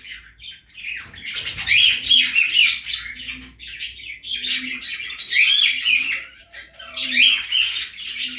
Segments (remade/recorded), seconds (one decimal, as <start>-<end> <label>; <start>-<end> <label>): 0.0-2.6 remade; 2.6-5.5 recorded; 5.5-8.4 remade